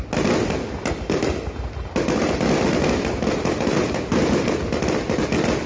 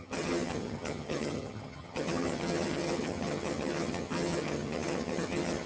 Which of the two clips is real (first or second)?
first